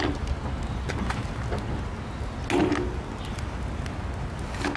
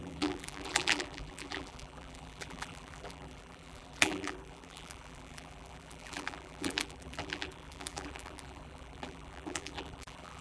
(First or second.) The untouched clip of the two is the first